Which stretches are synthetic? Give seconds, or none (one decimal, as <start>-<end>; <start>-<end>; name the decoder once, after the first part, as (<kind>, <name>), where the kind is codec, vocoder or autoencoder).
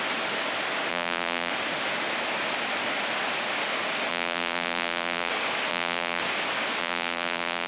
0.9-1.5 (vocoder, BigVGAN v2); 4.1-5.3; 5.7-6.2; 6.8-7.7